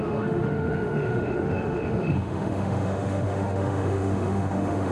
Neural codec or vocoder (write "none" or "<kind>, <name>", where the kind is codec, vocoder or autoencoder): autoencoder, DAC-VAE